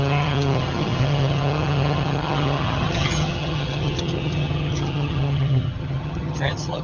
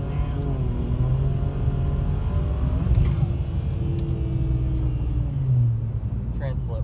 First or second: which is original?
second